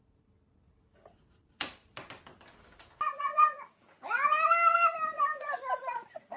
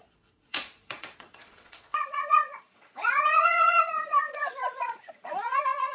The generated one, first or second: second